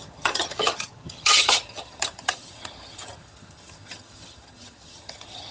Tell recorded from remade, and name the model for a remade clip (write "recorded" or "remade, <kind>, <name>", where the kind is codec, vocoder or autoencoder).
remade, vocoder, HiFi-GAN